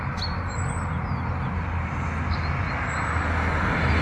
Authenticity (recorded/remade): recorded